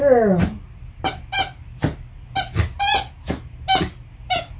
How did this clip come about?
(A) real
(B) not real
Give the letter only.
A